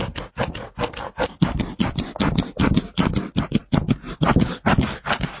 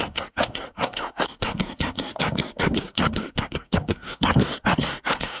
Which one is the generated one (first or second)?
second